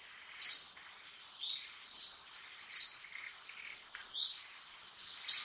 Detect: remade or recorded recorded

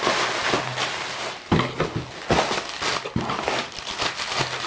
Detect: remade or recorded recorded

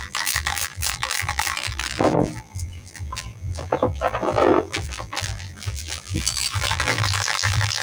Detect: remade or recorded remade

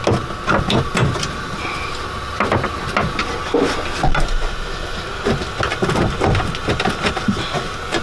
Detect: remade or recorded recorded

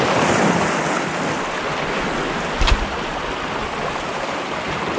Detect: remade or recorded recorded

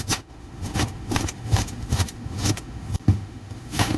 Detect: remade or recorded remade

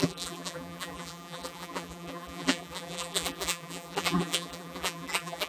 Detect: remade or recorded remade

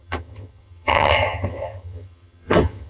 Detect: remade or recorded remade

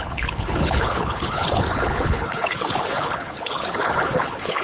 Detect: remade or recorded remade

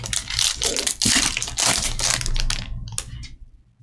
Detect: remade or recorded recorded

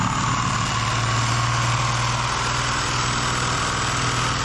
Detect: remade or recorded recorded